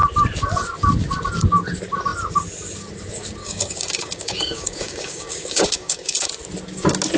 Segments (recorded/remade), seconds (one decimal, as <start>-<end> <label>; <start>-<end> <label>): 0.0-3.4 recorded; 3.4-6.3 remade; 6.3-7.2 recorded